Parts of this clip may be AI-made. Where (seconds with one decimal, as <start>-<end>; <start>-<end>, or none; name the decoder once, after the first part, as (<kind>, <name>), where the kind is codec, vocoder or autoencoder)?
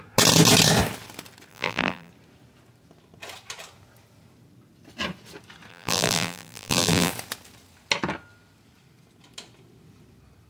1.5-2.1 (vocoder, BigVGAN v2); 5.7-7.1